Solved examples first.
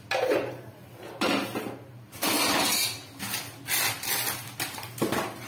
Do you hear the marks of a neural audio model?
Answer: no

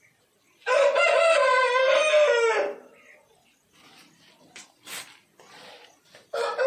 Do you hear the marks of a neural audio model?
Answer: no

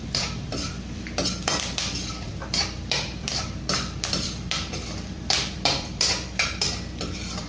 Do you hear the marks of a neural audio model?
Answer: yes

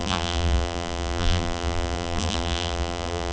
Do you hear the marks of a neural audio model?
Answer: yes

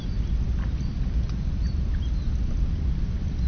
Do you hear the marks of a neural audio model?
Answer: no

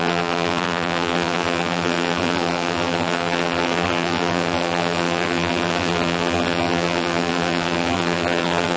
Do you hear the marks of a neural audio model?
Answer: yes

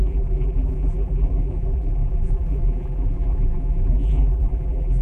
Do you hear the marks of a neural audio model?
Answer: yes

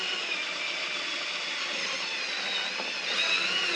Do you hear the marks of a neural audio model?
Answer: no